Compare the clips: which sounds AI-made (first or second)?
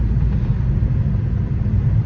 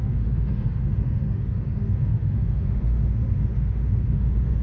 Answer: second